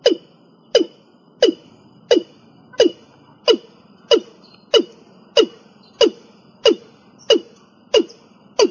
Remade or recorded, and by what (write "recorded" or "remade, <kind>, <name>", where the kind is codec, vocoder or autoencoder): recorded